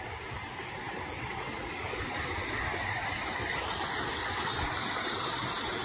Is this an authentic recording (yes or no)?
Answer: yes